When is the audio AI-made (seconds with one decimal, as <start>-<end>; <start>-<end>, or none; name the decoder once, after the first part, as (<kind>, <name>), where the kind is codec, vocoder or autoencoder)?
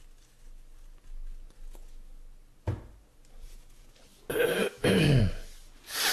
4.6-5.2 (autoencoder, DAC-VAE)